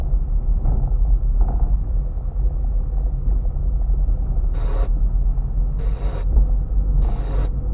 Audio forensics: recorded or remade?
recorded